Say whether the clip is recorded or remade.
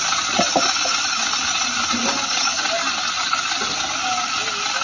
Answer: recorded